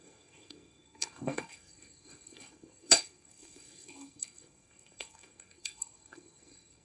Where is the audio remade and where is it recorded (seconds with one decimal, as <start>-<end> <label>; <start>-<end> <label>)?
0.0-6.8 remade